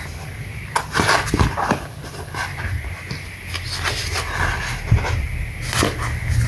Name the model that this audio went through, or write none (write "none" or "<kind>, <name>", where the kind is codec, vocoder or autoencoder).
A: none